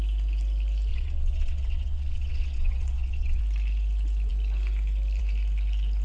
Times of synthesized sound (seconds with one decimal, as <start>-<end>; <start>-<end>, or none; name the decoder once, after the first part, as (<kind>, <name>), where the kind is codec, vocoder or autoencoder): 0.9-3.4 (vocoder, WaveNeXt)